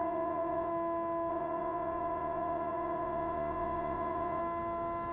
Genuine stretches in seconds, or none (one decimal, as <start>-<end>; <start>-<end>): 0.7-1.3; 4.4-5.1